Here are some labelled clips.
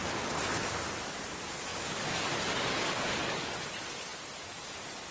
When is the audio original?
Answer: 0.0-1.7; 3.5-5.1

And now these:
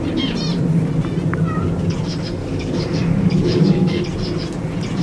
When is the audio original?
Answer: 0.0-2.4; 4.0-5.0

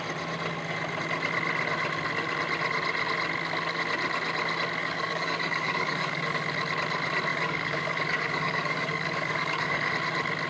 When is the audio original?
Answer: 0.0-4.8; 6.2-7.3; 9.9-10.5

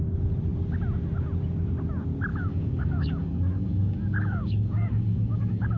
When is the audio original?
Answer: 0.0-2.3

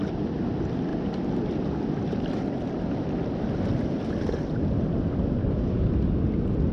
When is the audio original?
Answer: 0.0-5.4; 5.9-6.7

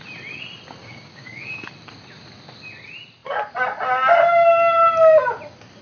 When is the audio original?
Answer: 0.0-0.8; 1.7-5.8

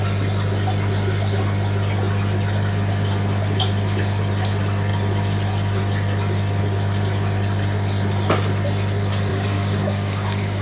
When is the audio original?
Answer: 0.0-9.3

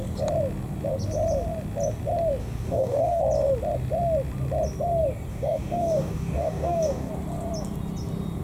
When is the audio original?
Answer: 0.0-2.4; 3.2-5.3; 7.1-8.4